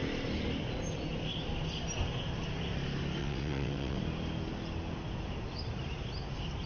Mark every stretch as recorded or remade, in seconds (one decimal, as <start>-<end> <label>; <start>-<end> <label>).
0.0-3.2 recorded; 3.2-4.0 remade; 4.0-6.7 recorded